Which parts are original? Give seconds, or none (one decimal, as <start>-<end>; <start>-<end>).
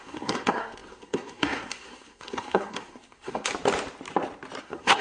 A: 3.5-4.6